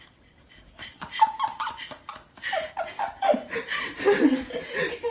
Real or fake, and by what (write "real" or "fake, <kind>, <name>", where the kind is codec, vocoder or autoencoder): real